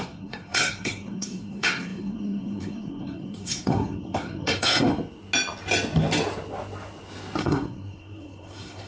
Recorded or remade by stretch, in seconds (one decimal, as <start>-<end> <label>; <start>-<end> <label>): 0.0-4.9 remade; 4.9-7.4 recorded; 7.4-8.9 remade